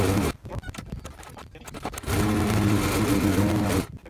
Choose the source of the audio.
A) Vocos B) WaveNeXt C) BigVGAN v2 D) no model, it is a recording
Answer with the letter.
D